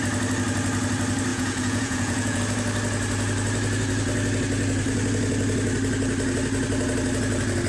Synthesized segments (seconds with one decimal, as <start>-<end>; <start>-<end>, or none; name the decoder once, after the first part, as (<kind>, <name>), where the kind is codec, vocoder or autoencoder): 1.3-2.4 (vocoder, Vocos)